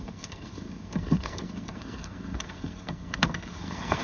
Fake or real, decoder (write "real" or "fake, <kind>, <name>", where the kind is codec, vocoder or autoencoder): fake, codec, SNAC